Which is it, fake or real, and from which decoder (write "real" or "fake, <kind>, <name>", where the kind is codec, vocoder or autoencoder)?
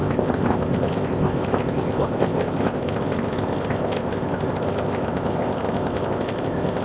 fake, codec, ZipCodec